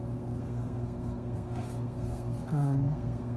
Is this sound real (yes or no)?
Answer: no